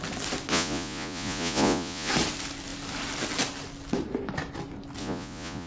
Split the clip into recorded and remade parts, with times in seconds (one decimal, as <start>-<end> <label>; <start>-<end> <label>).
0.0-0.5 recorded; 0.5-2.1 remade; 2.1-5.0 recorded; 5.0-5.7 remade

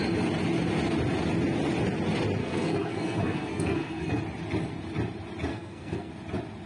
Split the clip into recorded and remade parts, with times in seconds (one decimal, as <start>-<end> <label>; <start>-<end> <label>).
0.0-2.4 recorded; 2.4-4.2 remade; 4.2-5.5 recorded; 5.5-6.1 remade; 6.1-6.7 recorded

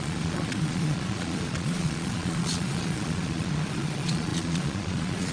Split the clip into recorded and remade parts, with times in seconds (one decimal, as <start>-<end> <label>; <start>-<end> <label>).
0.0-5.3 remade

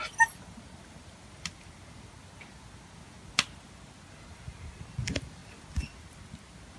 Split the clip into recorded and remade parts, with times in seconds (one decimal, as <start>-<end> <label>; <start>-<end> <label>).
0.0-6.8 recorded